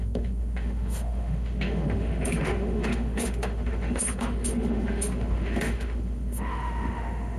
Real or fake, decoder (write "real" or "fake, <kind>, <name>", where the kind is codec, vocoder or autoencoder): fake, autoencoder, DAC-VAE